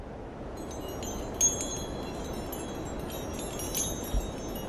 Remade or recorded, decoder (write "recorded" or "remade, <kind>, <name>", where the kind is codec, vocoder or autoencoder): recorded